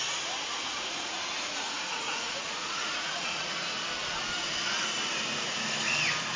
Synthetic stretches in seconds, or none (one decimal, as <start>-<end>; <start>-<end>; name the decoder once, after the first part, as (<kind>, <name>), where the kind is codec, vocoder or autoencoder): 0.5-3.5 (vocoder, Vocos)